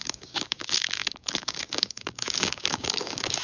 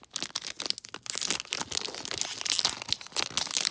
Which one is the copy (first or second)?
first